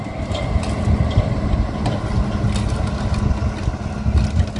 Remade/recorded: recorded